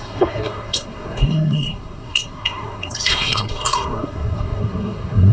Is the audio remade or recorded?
remade